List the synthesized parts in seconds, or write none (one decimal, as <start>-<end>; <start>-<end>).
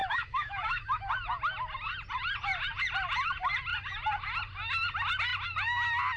0.0-1.1